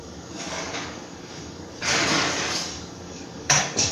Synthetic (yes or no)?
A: yes